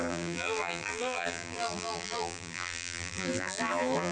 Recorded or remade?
remade